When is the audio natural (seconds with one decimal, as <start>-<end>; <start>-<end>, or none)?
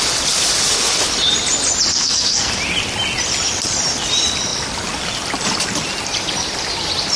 0.0-1.9; 2.5-7.2